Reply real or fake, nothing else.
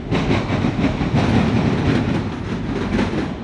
real